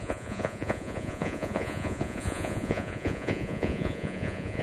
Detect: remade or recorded remade